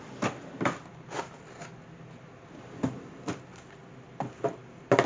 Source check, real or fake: real